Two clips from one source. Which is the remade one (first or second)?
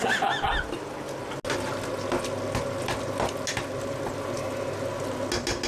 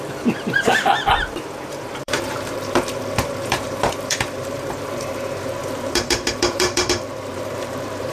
second